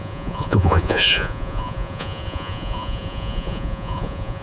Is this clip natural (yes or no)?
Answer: no